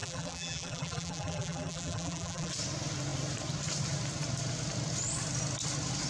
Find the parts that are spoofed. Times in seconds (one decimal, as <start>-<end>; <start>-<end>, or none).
0.0-2.5